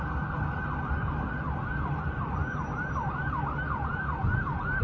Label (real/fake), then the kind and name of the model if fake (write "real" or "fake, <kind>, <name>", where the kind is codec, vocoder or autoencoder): real